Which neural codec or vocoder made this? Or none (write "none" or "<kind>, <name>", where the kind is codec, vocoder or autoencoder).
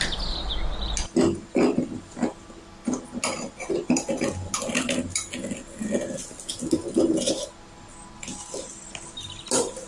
none